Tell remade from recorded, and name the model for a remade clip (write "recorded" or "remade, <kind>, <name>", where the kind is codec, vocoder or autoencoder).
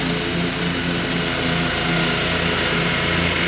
recorded